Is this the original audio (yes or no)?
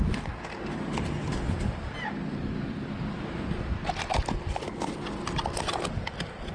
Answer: yes